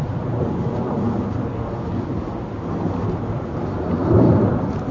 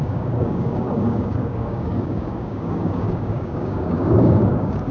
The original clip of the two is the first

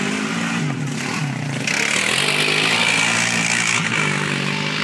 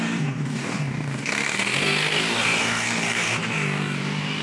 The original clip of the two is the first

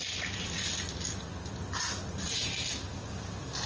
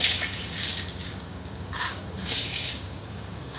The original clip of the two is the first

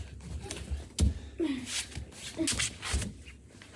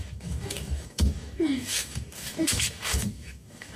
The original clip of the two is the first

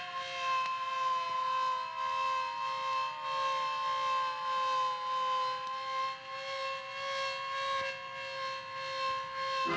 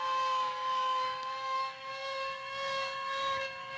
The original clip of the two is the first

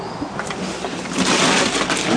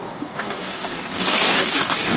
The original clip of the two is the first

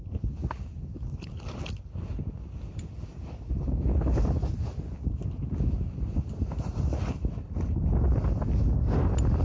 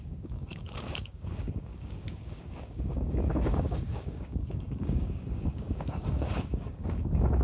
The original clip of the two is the first